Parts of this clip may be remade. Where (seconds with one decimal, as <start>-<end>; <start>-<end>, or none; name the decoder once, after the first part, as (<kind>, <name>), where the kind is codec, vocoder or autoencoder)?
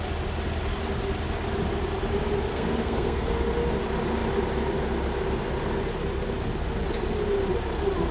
2.5-3.3 (codec, SNAC)